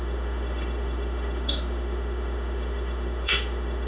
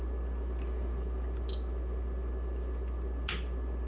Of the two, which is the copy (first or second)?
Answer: first